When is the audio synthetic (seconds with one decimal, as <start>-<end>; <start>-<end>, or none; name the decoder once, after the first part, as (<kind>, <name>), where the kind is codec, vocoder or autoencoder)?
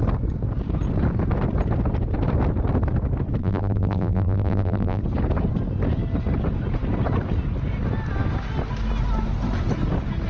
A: 3.4-5.0 (vocoder, BigVGAN v2)